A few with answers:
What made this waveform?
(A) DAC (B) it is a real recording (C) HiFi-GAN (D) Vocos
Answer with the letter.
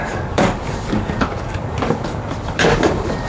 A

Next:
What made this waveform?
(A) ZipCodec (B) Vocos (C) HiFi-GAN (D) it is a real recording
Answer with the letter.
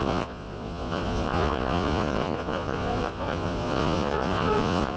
B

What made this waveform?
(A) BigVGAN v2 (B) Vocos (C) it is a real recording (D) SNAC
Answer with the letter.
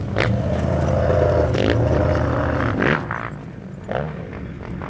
C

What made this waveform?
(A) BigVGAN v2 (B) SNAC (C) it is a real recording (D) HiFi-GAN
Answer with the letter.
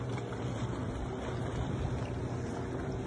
C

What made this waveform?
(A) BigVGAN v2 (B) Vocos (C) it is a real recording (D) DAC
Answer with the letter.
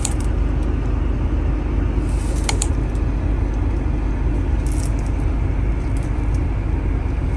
C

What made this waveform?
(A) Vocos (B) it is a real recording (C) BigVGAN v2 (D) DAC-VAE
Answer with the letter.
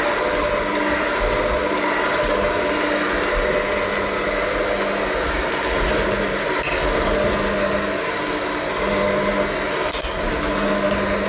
B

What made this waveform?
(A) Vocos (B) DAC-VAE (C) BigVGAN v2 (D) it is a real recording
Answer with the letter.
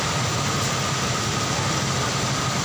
D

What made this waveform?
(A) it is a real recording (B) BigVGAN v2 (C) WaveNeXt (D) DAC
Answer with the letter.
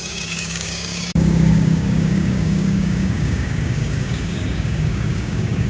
D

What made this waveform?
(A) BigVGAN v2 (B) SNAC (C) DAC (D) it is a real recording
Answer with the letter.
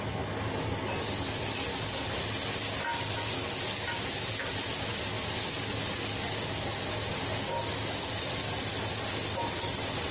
D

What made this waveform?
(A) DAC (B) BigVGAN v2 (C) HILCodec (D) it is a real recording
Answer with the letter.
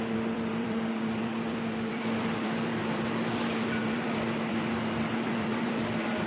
B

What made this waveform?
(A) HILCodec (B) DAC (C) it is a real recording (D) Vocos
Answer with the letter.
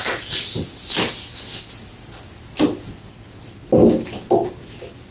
C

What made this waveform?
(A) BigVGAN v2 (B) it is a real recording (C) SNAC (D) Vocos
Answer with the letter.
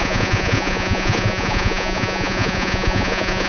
D